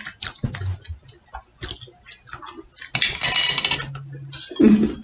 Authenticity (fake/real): real